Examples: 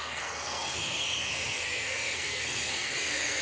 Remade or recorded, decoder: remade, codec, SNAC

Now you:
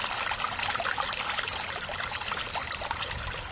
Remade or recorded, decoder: recorded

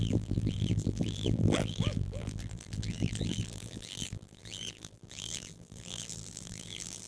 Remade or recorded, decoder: remade, vocoder, BigVGAN v2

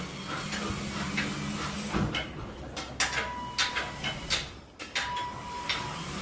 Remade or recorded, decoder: recorded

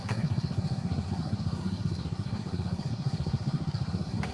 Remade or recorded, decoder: remade, codec, SNAC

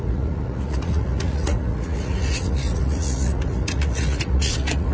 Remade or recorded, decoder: remade, vocoder, Vocos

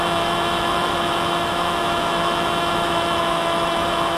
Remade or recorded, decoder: remade, autoencoder, DAC-VAE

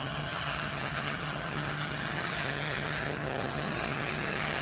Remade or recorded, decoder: remade, vocoder, HiFi-GAN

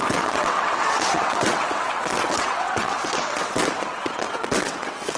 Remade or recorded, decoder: remade, vocoder, WaveNeXt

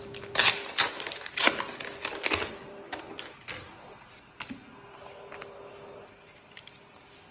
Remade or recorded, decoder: recorded